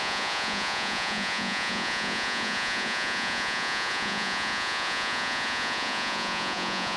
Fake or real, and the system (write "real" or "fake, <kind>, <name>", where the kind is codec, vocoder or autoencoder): fake, vocoder, Vocos